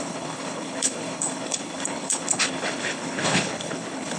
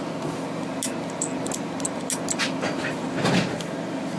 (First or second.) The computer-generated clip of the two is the first